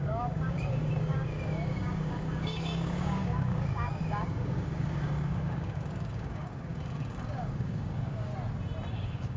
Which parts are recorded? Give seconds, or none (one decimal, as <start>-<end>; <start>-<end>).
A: 8.3-8.9